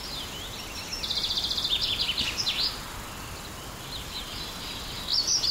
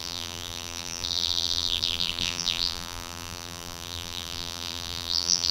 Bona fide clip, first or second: first